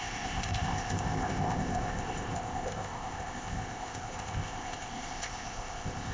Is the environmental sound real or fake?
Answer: fake